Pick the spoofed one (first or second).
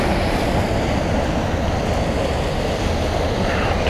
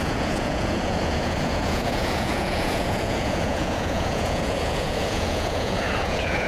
second